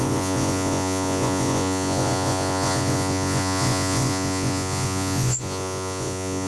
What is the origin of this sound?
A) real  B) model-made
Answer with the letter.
B